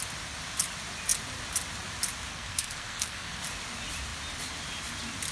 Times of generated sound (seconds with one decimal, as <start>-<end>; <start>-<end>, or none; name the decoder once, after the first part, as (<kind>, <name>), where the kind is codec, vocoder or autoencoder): 2.3-3.4 (codec, SNAC)